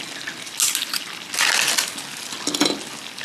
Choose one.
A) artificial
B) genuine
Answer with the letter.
B